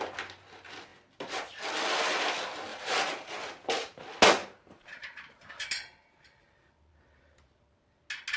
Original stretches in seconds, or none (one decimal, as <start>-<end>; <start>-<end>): 0.0-2.7; 3.5-4.4; 5.5-8.4